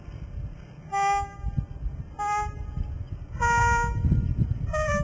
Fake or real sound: real